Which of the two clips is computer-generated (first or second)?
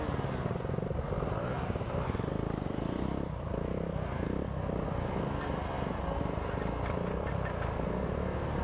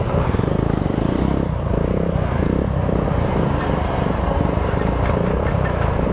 second